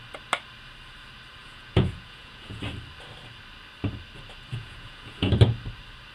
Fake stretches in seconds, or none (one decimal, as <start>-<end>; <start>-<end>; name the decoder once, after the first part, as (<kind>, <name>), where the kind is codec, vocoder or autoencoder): 1.4-2.6 (vocoder, Vocos); 4.5-5.3